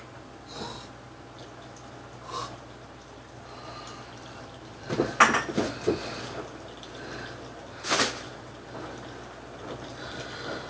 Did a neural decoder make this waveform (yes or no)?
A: no